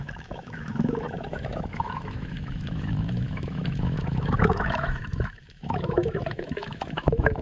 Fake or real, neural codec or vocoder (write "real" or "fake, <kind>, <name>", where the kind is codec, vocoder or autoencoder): fake, autoencoder, DAC-VAE